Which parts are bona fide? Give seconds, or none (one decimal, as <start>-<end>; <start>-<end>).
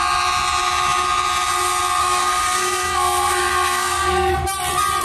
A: 0.0-2.0; 4.3-5.0